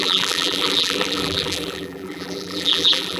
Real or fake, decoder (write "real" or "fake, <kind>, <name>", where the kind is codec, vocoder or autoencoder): fake, vocoder, BigVGAN v2